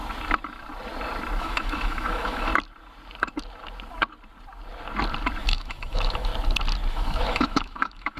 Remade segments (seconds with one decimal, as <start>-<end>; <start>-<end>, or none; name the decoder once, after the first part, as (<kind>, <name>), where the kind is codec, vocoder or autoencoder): 1.4-2.5 (autoencoder, DAC-VAE); 5.4-6.3; 6.9-8.2